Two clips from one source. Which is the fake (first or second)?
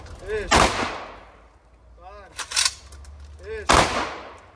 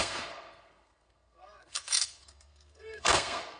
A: second